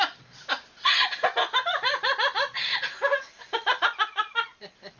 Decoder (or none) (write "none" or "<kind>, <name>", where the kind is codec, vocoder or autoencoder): none